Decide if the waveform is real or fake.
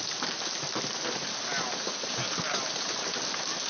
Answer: real